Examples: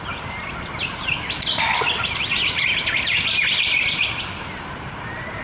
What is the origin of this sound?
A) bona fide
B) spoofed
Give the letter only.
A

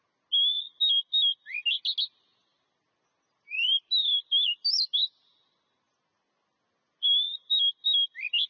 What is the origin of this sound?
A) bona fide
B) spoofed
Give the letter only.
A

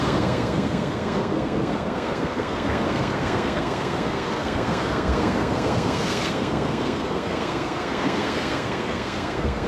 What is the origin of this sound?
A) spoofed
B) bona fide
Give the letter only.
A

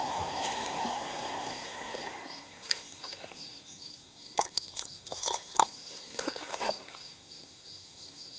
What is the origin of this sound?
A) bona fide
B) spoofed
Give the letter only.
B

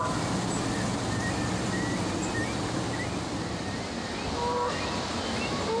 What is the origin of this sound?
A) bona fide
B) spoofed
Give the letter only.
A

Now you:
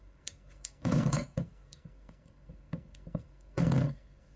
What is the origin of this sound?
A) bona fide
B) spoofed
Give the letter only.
B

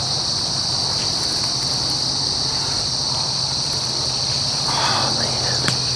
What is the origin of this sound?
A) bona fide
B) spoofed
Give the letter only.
A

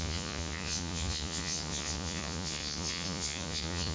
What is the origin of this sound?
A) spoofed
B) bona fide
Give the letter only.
A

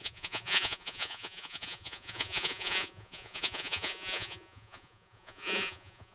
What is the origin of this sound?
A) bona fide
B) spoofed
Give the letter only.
B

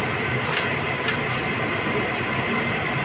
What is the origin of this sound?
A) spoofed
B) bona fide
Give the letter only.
B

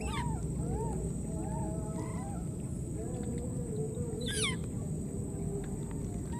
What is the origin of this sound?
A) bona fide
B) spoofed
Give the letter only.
A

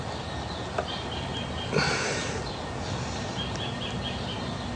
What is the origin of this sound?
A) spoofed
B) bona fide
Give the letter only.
B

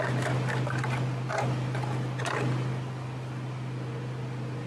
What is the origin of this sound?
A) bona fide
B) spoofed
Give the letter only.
A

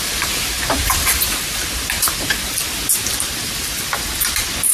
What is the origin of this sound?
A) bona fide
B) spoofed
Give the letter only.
B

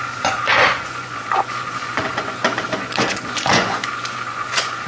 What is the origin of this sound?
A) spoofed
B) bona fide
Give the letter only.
A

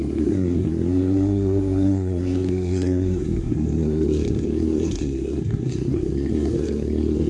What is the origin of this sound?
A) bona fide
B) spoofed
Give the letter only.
B